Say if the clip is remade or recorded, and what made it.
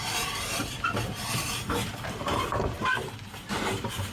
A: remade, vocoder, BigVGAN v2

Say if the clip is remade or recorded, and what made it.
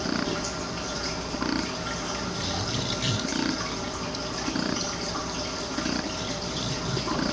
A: recorded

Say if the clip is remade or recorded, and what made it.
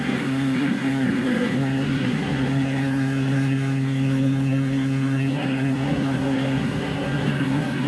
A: remade, codec, SNAC